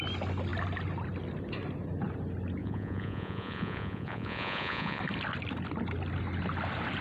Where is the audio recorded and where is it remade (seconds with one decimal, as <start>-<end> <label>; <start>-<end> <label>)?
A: 0.0-2.6 recorded; 2.6-5.0 remade; 5.0-7.0 recorded

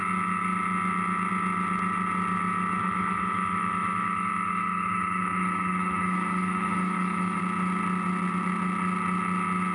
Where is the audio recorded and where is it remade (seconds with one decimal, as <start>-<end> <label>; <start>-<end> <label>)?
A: 0.0-2.8 recorded; 2.8-7.4 remade; 7.4-9.7 recorded

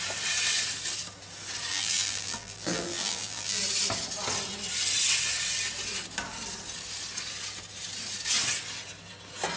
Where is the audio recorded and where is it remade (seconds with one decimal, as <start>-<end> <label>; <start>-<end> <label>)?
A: 0.0-1.7 recorded; 1.7-3.6 remade; 3.6-9.6 recorded